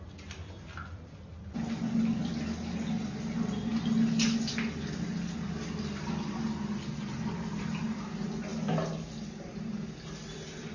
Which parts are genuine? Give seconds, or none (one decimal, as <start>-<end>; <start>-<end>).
0.0-10.7